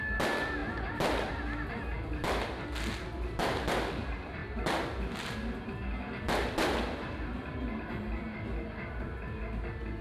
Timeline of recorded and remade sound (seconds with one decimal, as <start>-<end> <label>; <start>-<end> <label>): 0.0-10.0 recorded